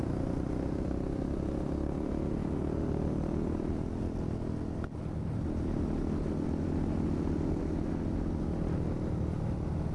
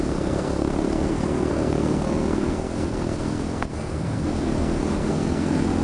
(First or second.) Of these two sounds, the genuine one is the first